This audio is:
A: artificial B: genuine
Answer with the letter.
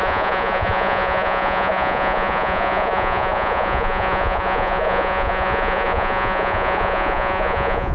A